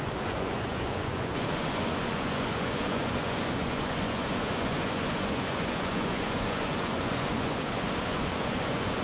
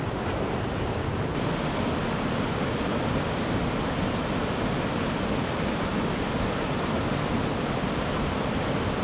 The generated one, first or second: first